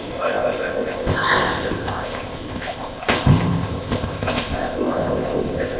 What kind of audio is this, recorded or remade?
remade